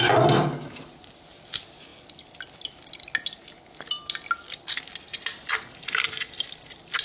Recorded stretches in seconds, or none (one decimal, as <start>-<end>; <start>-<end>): 0.0-7.0